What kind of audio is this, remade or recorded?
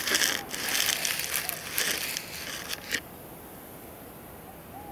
recorded